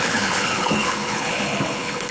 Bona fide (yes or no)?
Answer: no